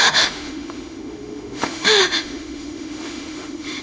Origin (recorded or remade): remade